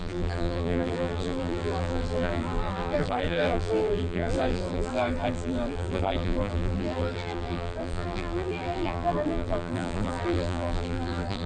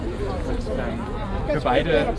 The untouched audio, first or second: second